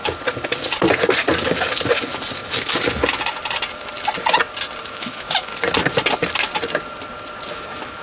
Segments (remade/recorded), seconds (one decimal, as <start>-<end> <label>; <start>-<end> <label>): 0.0-4.8 recorded; 4.8-5.5 remade; 5.5-7.5 recorded; 7.5-8.0 remade